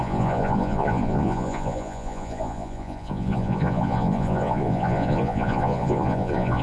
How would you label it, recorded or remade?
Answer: remade